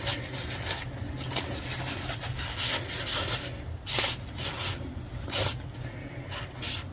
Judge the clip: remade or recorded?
recorded